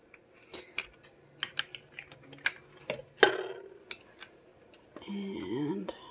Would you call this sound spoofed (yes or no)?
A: no